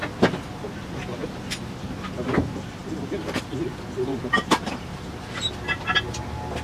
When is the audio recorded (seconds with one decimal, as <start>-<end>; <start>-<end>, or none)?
0.0-2.8; 3.4-4.1; 5.5-6.6